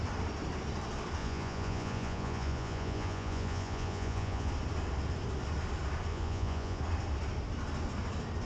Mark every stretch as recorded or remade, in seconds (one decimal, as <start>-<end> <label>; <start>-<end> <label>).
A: 0.0-1.2 recorded; 1.2-4.5 remade; 4.5-6.1 recorded; 6.1-6.8 remade; 6.8-8.5 recorded